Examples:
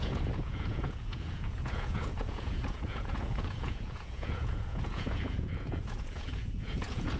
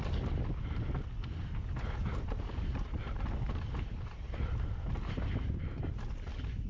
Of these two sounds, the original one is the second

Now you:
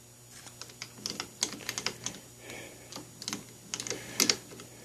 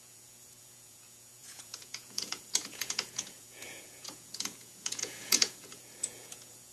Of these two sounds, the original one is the first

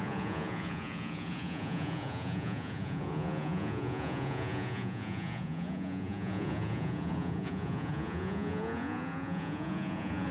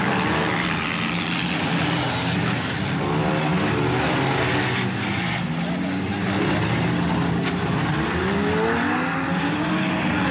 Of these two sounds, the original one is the second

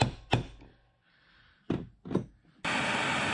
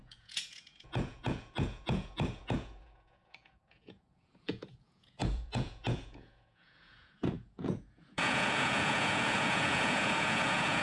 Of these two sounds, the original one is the first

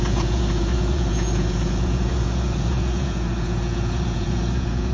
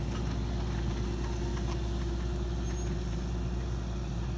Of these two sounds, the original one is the second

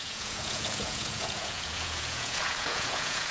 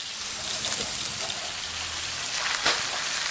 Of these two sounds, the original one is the second